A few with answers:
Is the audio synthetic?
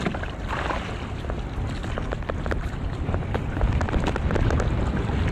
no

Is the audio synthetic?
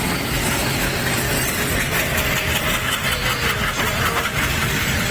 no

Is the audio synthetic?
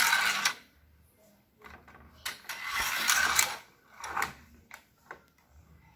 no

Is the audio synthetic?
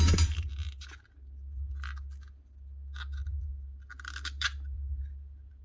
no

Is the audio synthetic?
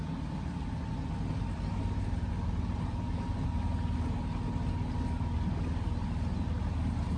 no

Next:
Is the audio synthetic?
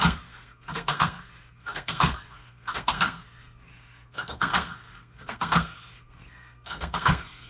yes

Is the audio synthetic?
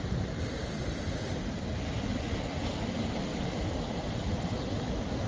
no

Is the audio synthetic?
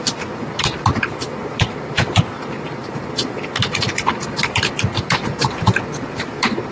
yes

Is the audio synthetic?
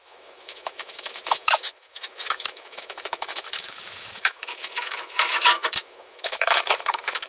yes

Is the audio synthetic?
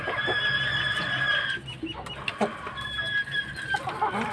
no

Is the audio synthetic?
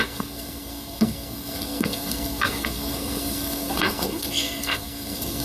yes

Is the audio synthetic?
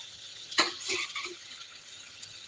yes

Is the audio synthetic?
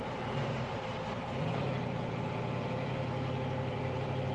yes